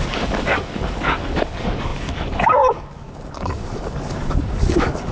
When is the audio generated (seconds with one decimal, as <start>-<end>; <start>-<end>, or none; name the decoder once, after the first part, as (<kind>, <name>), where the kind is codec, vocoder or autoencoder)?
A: 0.0-5.1 (codec, DAC)